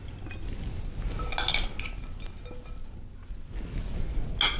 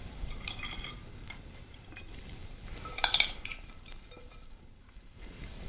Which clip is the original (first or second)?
first